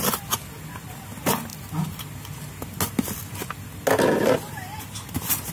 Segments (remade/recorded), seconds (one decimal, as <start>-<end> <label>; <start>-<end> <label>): 0.0-5.5 recorded